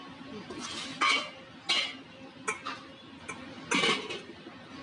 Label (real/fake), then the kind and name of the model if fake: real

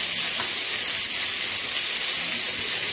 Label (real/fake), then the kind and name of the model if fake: real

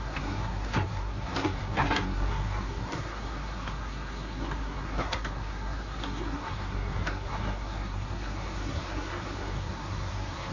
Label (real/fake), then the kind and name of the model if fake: fake, codec, SNAC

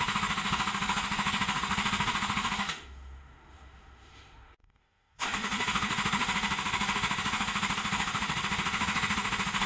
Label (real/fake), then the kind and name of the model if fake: fake, autoencoder, DAC-VAE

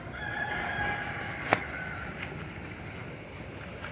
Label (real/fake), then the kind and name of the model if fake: real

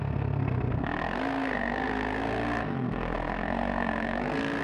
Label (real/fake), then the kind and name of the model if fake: fake, codec, SNAC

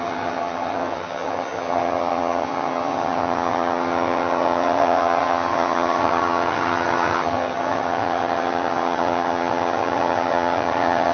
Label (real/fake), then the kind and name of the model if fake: fake, vocoder, HiFi-GAN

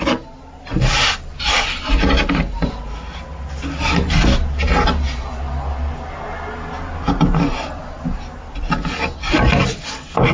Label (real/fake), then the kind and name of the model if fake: real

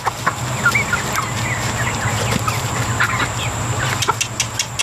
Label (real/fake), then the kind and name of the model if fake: real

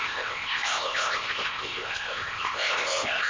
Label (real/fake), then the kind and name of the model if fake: fake, codec, ZipCodec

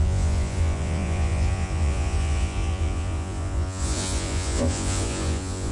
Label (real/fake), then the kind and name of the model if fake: fake, vocoder, Vocos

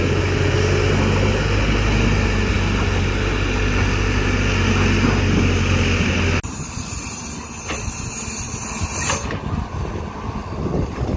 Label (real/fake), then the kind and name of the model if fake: real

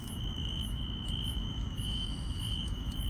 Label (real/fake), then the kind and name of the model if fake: fake, autoencoder, DAC-VAE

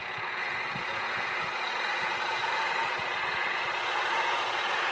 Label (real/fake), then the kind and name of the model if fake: fake, vocoder, Vocos